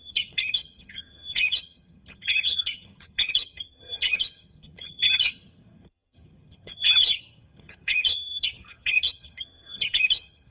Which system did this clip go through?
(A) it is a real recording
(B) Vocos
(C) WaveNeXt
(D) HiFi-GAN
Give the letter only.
D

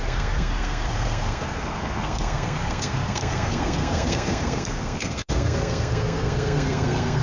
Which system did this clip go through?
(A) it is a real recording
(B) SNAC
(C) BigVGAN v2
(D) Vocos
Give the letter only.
B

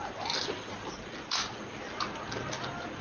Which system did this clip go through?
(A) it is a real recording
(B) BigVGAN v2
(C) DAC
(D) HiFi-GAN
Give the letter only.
A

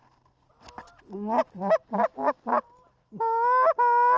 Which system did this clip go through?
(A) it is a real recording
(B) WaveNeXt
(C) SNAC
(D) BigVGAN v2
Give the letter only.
A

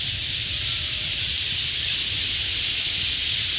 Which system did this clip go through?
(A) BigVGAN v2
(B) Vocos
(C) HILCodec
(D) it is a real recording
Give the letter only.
A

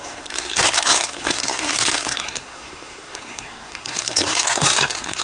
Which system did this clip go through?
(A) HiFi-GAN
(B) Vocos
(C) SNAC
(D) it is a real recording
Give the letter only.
C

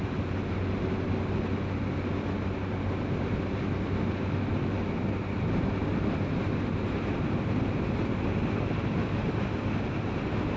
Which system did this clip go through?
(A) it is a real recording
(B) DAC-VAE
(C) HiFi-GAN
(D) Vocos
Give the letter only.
A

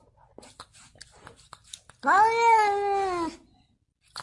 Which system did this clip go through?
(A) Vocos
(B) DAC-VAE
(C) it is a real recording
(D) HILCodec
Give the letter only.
C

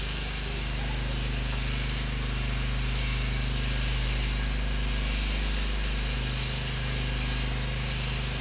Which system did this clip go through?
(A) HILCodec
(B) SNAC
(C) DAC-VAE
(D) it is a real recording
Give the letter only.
D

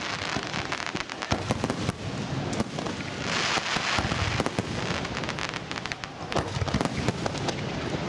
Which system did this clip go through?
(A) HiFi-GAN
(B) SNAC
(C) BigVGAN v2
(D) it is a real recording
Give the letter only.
D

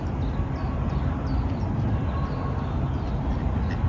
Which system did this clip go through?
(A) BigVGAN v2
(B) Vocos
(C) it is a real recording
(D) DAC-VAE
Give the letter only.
C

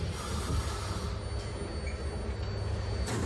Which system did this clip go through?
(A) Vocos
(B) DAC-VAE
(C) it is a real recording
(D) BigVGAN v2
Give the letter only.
C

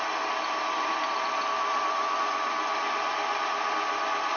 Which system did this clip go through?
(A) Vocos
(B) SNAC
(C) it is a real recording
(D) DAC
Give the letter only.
C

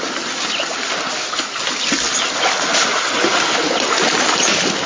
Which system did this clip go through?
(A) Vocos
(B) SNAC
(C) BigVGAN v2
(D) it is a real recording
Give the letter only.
D